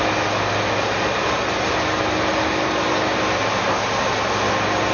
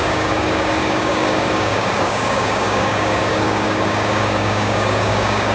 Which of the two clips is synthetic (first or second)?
second